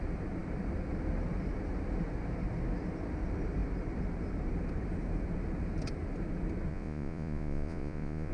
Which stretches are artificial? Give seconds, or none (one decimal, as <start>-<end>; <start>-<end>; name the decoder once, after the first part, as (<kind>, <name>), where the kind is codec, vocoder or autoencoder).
6.7-8.3 (vocoder, Vocos)